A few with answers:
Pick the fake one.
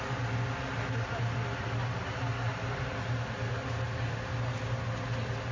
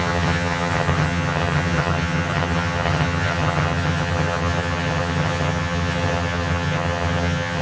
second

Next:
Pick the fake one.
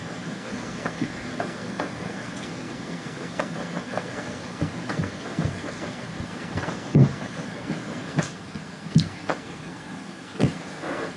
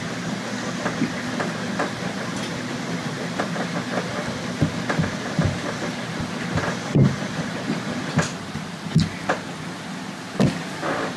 first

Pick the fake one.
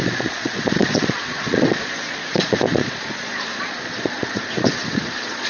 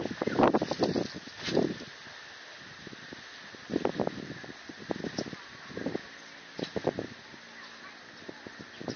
first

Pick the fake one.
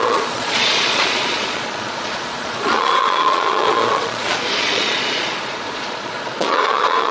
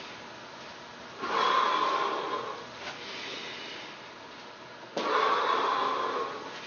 first